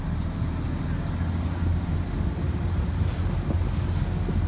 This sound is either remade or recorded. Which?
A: recorded